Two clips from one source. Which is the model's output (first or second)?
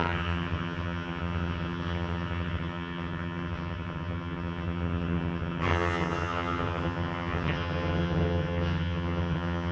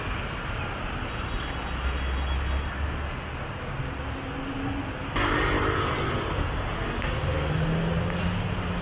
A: first